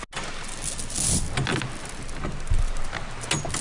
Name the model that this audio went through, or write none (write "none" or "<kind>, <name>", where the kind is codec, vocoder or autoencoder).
none